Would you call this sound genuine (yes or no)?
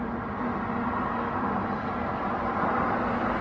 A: yes